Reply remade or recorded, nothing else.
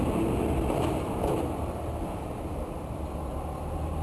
remade